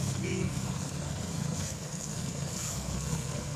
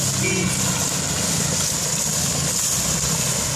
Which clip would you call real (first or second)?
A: second